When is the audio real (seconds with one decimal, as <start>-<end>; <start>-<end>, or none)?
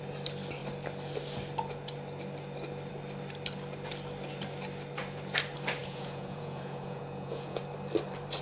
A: 0.0-5.8; 7.6-8.4